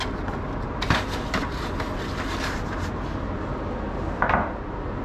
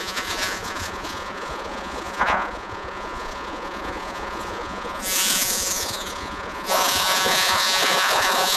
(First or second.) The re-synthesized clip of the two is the second